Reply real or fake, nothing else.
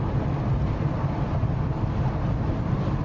real